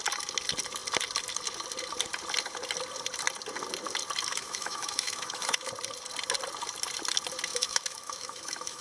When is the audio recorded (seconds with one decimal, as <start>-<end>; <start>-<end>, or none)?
0.0-4.3; 5.7-7.5